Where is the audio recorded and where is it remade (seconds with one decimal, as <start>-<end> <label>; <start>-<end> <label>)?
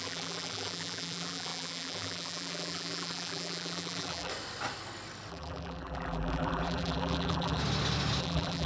0.0-4.3 remade; 4.3-5.3 recorded; 5.3-7.6 remade; 7.6-8.2 recorded; 8.2-8.7 remade